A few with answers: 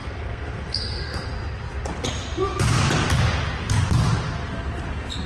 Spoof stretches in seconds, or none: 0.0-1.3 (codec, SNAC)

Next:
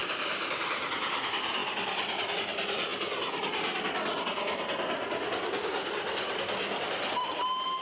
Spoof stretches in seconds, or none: 0.0-0.6 (vocoder, BigVGAN v2)

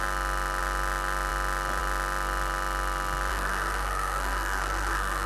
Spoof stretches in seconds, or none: 3.3-5.3 (codec, SNAC)

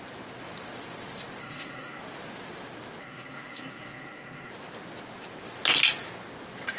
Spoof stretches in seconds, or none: 1.4-2.0 (codec, SNAC); 3.0-4.5

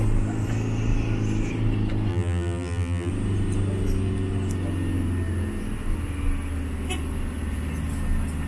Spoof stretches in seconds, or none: 2.1-3.1 (vocoder, BigVGAN v2)

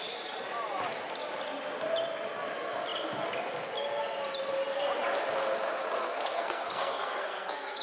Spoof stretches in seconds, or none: 6.1-7.8 (codec, SNAC)